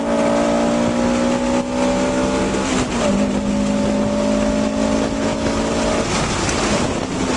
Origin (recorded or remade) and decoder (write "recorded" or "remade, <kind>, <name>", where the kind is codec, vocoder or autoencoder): recorded